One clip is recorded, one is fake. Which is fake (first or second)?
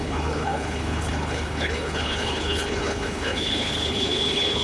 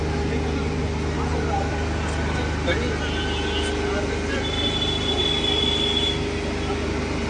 first